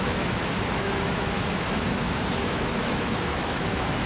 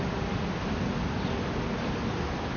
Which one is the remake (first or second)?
first